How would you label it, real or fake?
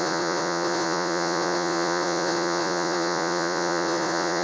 fake